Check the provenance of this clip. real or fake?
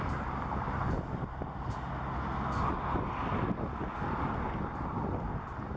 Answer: real